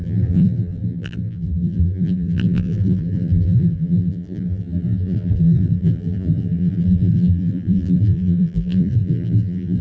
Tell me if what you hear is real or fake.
fake